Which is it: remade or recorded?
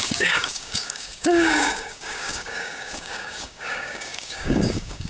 remade